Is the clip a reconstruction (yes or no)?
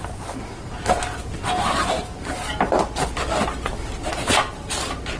no